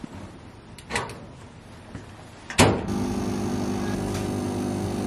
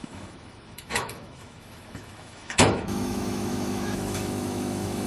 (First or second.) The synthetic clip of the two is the second